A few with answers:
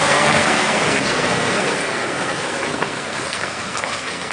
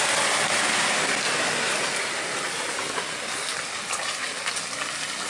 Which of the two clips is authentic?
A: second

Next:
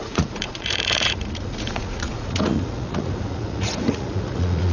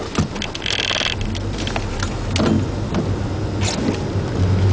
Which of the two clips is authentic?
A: second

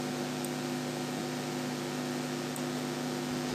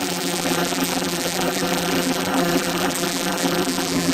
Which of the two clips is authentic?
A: first